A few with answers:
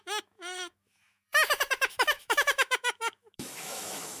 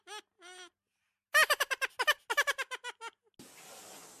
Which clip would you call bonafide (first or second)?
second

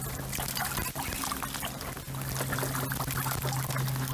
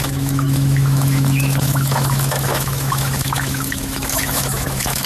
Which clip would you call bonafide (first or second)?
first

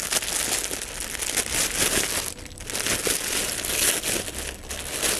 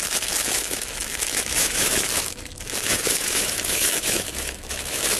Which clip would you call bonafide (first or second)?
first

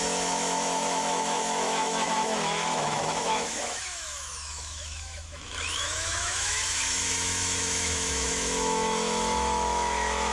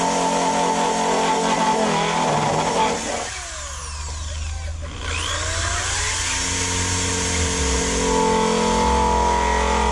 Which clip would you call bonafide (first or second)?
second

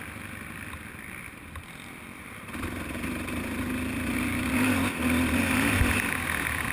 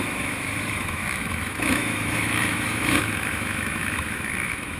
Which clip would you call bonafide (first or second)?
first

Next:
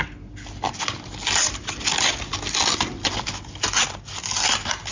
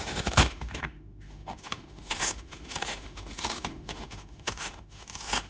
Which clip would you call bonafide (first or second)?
first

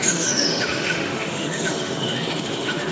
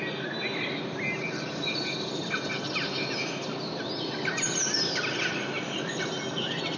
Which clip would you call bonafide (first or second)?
second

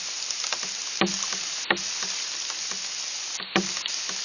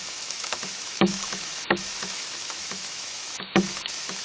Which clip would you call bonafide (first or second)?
first